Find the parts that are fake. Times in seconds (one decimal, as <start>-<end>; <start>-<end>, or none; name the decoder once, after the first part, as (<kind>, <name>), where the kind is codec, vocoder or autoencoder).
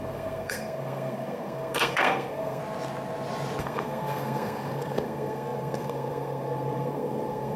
0.0-2.6 (codec, SNAC); 3.6-7.6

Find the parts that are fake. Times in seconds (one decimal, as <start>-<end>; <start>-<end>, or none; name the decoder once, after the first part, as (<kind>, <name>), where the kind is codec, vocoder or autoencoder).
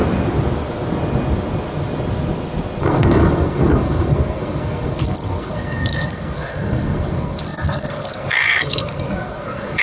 2.8-9.8 (codec, SNAC)